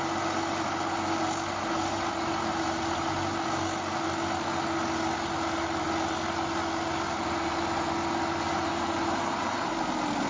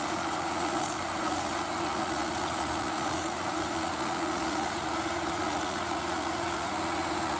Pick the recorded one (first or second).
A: first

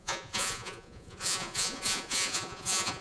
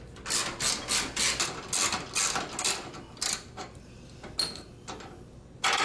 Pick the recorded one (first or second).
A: second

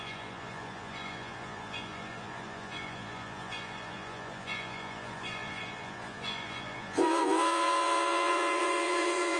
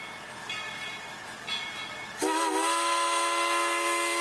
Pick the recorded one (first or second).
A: second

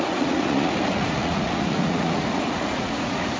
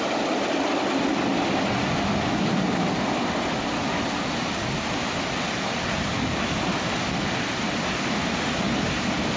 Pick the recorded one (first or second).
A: second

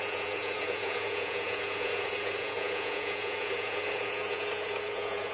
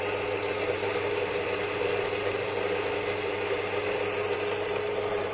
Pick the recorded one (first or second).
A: second